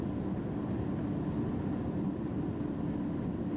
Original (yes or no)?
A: yes